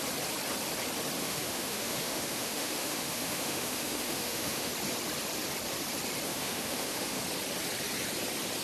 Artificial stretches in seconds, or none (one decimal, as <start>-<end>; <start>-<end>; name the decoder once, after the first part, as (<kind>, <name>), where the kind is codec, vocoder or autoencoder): 1.2-4.7 (autoencoder, DAC-VAE); 6.3-7.2